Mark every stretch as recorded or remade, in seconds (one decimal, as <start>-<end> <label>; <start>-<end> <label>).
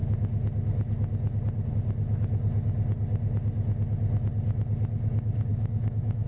0.0-5.5 recorded; 5.5-6.3 remade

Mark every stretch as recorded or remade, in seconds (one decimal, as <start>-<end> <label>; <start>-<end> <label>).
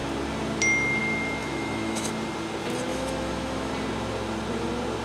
0.0-1.4 recorded; 1.4-2.1 remade; 2.1-2.9 recorded; 2.9-3.7 remade; 3.7-5.0 recorded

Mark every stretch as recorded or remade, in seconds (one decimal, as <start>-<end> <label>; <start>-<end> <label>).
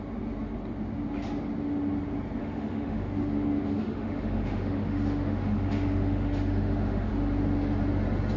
0.0-2.4 recorded; 2.4-7.1 remade; 7.1-8.4 recorded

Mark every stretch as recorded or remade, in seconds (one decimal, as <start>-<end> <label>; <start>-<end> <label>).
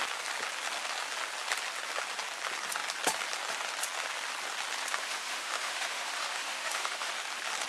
0.0-5.0 recorded; 5.0-7.1 remade; 7.1-7.7 recorded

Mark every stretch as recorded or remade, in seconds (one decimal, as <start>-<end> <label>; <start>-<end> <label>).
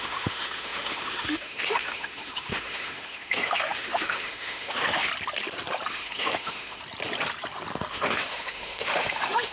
0.0-5.1 remade; 5.1-5.9 recorded; 5.9-6.8 remade; 6.8-7.9 recorded; 7.9-9.5 remade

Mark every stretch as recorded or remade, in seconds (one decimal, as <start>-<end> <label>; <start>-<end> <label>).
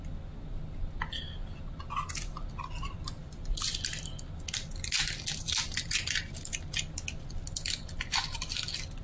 0.0-9.0 recorded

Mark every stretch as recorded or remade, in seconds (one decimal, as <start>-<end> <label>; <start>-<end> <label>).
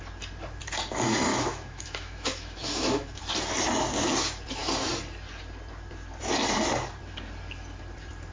0.0-1.3 recorded; 1.3-3.2 remade; 3.2-8.3 recorded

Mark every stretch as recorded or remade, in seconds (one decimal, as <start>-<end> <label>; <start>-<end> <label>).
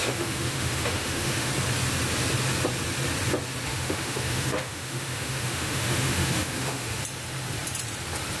0.0-1.5 remade; 1.5-3.7 recorded; 3.7-7.0 remade; 7.0-8.4 recorded